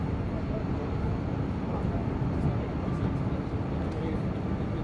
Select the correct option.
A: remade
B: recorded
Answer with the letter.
B